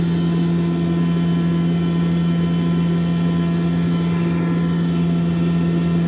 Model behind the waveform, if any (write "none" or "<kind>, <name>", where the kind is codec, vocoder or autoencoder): none